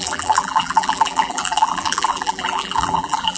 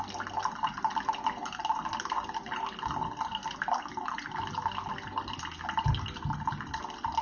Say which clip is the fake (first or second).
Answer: first